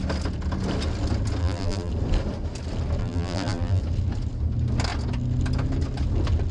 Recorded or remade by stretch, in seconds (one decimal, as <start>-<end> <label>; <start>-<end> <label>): 0.0-1.4 recorded; 1.4-1.9 remade; 1.9-3.0 recorded; 3.0-3.8 remade; 3.8-6.5 recorded